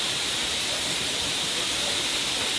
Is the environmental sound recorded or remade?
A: recorded